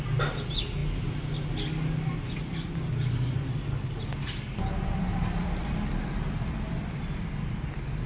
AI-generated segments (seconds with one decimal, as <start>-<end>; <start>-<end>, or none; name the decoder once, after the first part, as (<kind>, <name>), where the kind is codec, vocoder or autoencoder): none

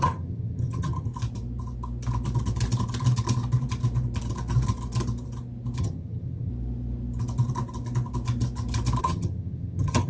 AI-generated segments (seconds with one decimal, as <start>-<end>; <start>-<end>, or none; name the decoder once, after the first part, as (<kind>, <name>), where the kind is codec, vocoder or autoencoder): 0.0-1.1 (vocoder, HiFi-GAN); 5.8-6.5; 9.0-10.1

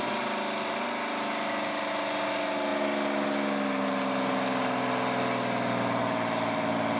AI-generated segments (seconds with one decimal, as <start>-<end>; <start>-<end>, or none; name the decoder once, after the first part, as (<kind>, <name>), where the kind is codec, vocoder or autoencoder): none

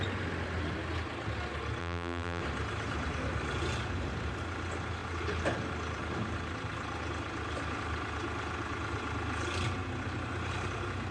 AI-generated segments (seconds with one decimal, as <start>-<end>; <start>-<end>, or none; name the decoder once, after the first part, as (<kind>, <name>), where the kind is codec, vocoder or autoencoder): 1.8-2.4 (vocoder, BigVGAN v2)